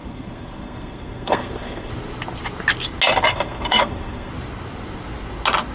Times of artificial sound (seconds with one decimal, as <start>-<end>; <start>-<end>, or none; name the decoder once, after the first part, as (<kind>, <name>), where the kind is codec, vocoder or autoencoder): 0.0-1.9 (codec, SNAC); 3.3-4.3